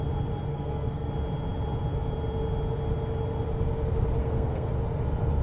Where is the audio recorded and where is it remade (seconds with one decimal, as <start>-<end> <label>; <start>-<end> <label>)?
0.0-0.5 recorded; 0.5-1.1 remade; 1.1-4.2 recorded; 4.2-4.7 remade; 4.7-5.4 recorded

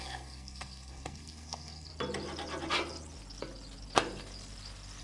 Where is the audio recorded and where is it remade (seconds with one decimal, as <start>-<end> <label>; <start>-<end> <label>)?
0.0-1.9 remade; 1.9-5.0 recorded

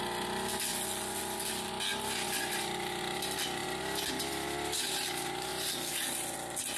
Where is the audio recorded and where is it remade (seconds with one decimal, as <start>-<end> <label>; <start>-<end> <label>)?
0.0-6.8 recorded

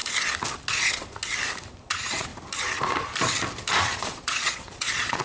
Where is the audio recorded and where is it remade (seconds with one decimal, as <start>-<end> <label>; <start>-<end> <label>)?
0.0-0.7 recorded; 0.7-1.2 remade; 1.2-1.8 recorded; 1.8-2.3 remade; 2.3-3.8 recorded; 3.8-5.2 remade

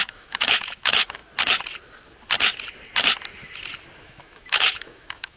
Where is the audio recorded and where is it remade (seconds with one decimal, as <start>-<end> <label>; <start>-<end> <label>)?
0.0-1.2 remade; 1.2-4.0 recorded; 4.0-5.4 remade

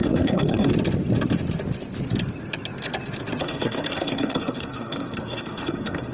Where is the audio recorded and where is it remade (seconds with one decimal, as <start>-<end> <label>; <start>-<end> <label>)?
0.0-0.7 remade; 0.7-3.4 recorded; 3.4-6.1 remade

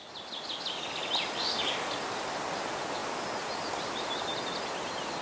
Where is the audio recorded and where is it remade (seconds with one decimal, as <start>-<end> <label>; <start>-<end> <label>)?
0.0-1.4 recorded; 1.4-2.6 remade; 2.6-5.2 recorded

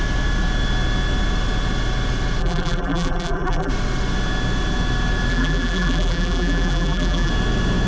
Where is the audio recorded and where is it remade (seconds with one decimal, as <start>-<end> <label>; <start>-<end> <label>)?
0.0-2.4 recorded; 2.4-3.7 remade; 3.7-5.3 recorded; 5.3-7.3 remade; 7.3-7.9 recorded